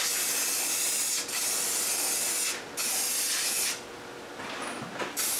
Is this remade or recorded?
recorded